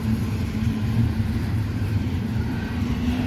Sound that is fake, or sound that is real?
fake